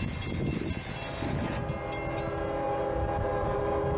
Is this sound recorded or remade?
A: recorded